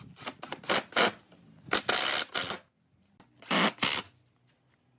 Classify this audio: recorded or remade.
recorded